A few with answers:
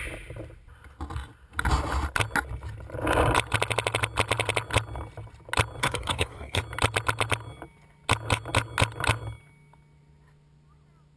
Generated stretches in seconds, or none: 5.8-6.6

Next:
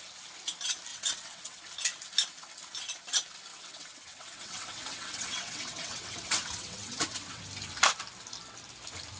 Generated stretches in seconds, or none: 0.9-1.6; 3.5-7.4

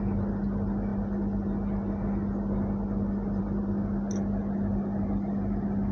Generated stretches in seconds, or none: none

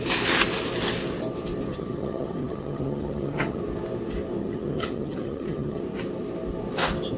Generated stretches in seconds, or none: 1.7-3.6; 4.4-5.8